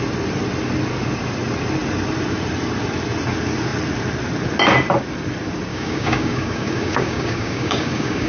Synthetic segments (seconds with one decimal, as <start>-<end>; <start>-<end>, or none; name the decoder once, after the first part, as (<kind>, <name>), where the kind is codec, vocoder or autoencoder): 5.7-8.3 (codec, DAC)